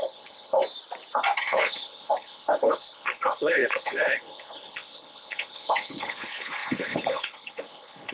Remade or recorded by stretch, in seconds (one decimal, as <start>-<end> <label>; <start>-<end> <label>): 0.0-0.6 remade; 0.6-1.4 recorded; 1.4-8.1 remade